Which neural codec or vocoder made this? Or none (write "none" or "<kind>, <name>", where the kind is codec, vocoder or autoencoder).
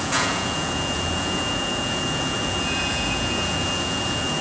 vocoder, Vocos